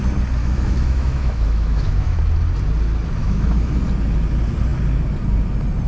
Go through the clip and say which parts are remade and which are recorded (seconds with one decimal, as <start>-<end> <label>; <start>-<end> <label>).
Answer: 0.0-0.4 recorded; 0.4-2.2 remade; 2.2-3.2 recorded; 3.2-3.8 remade; 3.8-5.9 recorded